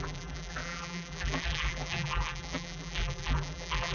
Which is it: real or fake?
fake